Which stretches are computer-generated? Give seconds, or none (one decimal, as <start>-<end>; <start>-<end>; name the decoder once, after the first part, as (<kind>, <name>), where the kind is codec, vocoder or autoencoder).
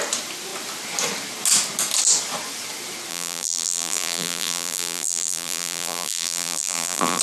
3.1-7.2 (vocoder, BigVGAN v2)